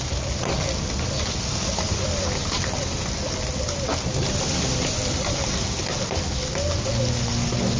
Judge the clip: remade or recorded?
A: recorded